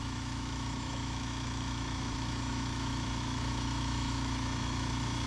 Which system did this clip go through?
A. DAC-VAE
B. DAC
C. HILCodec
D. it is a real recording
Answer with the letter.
A